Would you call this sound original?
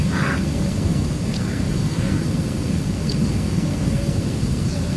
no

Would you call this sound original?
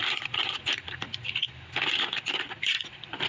yes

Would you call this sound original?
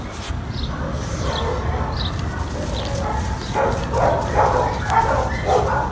yes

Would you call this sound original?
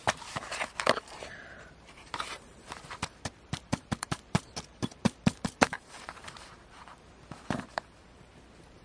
no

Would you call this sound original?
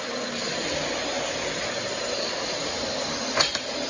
yes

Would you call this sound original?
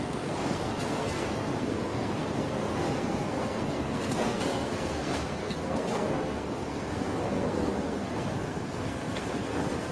no